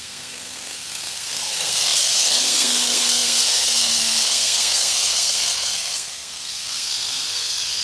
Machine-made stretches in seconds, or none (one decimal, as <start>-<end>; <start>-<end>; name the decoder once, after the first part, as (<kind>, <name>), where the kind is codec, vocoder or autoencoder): 0.0-7.8 (codec, SNAC)